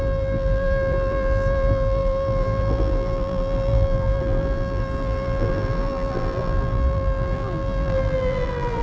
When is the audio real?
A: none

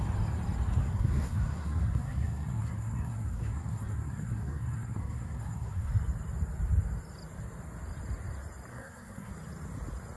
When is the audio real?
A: 0.0-0.8; 5.9-8.7; 9.3-10.2

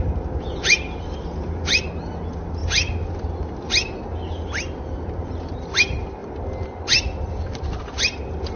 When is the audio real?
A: 0.0-8.6